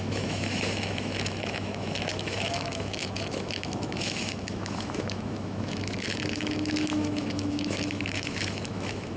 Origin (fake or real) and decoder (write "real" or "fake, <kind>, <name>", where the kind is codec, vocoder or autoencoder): fake, autoencoder, DAC-VAE